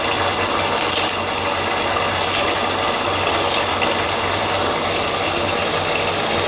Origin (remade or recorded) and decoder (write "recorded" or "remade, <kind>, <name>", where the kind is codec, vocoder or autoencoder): recorded